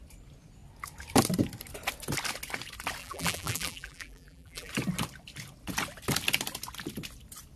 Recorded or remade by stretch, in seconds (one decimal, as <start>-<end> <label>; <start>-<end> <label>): 0.0-3.0 recorded; 3.0-4.7 remade; 4.7-7.6 recorded

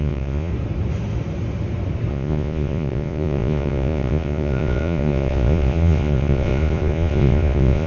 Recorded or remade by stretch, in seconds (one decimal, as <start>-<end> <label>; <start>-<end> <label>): 0.0-0.5 remade; 0.5-2.1 recorded; 2.1-7.9 remade

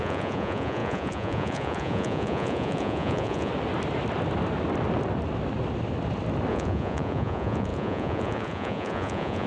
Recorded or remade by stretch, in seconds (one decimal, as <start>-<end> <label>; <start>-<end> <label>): 0.0-3.5 remade; 3.5-6.5 recorded; 6.5-9.5 remade

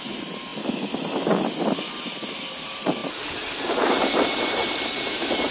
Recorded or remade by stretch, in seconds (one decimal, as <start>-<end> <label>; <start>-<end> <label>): 0.0-0.5 remade; 0.5-1.9 recorded; 1.9-5.5 remade